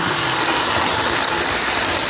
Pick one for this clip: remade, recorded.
recorded